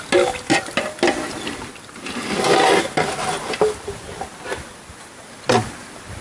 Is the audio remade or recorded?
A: recorded